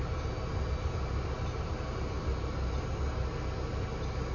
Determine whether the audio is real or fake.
real